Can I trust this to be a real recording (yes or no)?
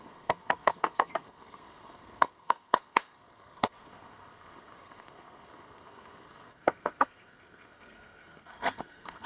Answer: no